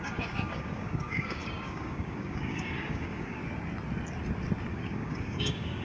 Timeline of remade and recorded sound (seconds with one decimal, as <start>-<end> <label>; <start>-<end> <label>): 0.0-3.4 remade; 3.4-4.7 recorded; 4.7-5.8 remade